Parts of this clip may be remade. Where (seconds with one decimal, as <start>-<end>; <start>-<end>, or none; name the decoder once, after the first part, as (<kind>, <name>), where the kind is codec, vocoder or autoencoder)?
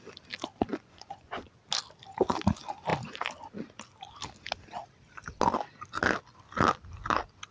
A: 0.7-1.6 (vocoder, Vocos)